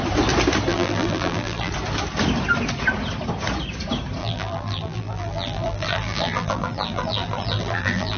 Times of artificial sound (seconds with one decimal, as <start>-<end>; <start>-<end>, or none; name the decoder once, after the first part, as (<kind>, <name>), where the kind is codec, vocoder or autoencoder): 0.7-1.7 (vocoder, BigVGAN v2); 4.2-8.2